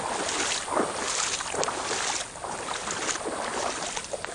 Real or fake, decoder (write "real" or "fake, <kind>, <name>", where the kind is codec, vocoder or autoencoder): real